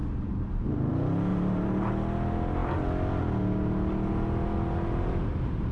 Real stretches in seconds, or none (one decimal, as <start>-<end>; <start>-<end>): 0.9-1.3; 1.9-5.7